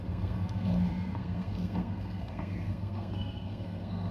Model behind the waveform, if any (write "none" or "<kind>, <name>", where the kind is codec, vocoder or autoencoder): codec, SNAC